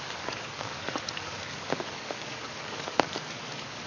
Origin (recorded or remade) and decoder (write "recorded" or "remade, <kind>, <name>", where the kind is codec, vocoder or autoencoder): remade, codec, DAC